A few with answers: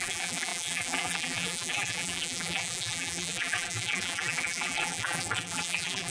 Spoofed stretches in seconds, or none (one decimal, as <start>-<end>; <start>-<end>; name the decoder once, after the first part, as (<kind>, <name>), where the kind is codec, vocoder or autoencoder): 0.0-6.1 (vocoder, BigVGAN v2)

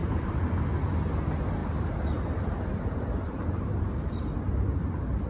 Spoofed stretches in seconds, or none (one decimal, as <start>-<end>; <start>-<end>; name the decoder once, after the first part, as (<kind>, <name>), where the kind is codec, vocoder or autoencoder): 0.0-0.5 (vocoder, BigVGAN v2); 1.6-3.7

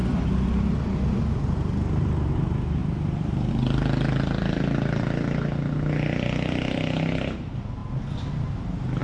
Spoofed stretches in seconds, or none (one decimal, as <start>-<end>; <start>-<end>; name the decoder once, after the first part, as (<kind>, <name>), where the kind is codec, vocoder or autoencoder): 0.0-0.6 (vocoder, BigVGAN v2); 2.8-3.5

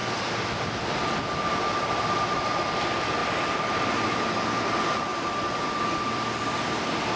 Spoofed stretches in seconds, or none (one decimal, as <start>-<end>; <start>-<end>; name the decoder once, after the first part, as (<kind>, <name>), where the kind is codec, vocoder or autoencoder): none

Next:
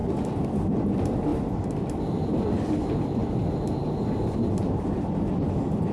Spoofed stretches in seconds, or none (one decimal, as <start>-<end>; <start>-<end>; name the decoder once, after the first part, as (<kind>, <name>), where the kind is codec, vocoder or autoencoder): 0.6-3.2 (vocoder, BigVGAN v2); 4.5-5.9